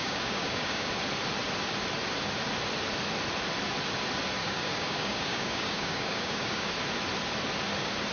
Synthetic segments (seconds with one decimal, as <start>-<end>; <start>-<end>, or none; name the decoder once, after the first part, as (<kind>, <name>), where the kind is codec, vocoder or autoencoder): 0.0-0.9 (codec, DAC); 4.4-6.7